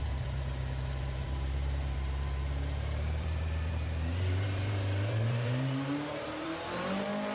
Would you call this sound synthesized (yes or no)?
yes